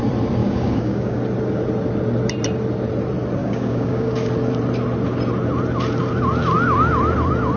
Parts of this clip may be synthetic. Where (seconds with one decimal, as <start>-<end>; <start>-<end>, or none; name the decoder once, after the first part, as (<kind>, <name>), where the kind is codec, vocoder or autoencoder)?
0.4-1.2 (codec, DAC); 3.4-4.3